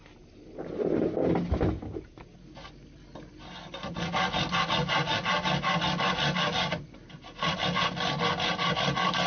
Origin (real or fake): real